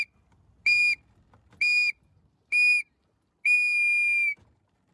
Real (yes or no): yes